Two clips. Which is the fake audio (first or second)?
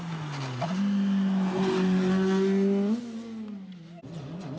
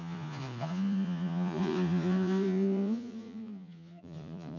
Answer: second